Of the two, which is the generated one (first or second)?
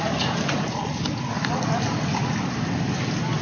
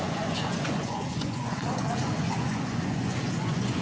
second